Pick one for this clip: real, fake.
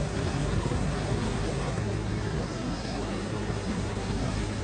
fake